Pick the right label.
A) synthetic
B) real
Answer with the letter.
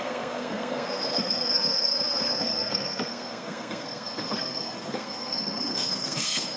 A